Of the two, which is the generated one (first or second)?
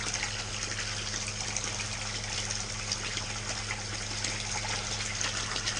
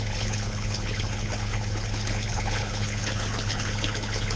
second